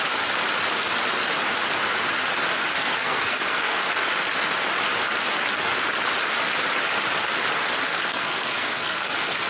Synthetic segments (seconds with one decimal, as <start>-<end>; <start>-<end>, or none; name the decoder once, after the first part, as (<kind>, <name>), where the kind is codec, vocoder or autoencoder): 2.7-4.1 (codec, SNAC); 7.9-9.1